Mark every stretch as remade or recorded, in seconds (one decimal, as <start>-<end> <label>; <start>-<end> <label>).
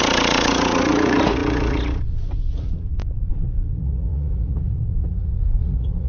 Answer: 0.0-6.1 remade